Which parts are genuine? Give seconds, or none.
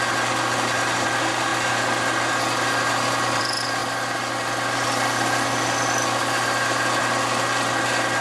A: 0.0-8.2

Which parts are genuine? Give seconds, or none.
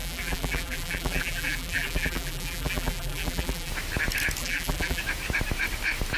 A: 3.7-4.4; 5.0-6.2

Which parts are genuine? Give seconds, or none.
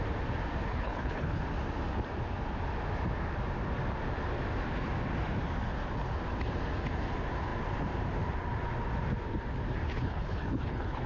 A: 0.0-0.7; 1.4-9.9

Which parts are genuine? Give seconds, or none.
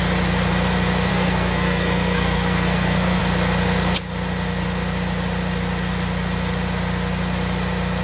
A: 0.0-1.1; 3.2-8.0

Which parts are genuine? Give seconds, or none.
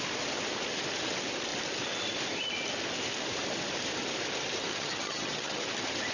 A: 0.0-4.7; 5.6-6.1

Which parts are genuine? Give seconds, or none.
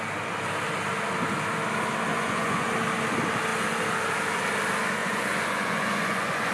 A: 0.0-2.1; 2.7-5.0